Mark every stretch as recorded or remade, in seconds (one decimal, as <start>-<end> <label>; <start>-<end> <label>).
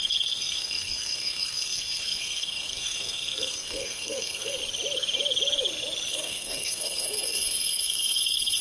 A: 0.0-4.6 remade; 4.6-6.1 recorded; 6.1-8.6 remade